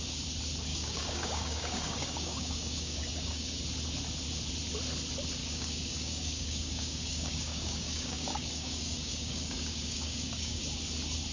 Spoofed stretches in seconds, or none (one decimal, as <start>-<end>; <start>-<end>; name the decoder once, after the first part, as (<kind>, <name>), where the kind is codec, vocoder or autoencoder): 0.7-3.6 (codec, DAC); 5.4-10.6